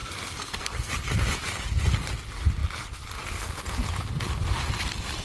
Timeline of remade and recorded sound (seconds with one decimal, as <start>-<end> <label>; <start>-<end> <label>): 0.0-0.9 remade; 0.9-5.2 recorded